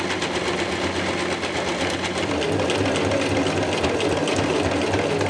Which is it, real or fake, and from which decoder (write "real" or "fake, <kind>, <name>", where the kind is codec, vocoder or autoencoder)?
real